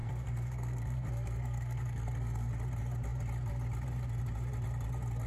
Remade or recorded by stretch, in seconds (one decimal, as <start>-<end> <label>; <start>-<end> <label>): 0.0-2.5 remade; 2.5-5.3 recorded